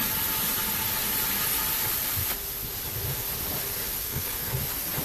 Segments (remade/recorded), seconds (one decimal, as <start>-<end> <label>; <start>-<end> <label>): 0.0-4.0 recorded; 4.0-4.6 remade; 4.6-5.0 recorded